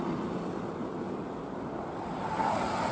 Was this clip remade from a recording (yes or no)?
no